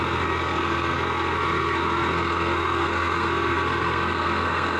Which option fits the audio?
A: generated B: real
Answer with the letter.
A